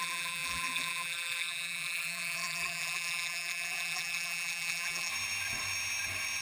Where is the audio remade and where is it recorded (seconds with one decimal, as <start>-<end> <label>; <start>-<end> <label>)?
0.0-5.1 remade; 5.1-6.4 recorded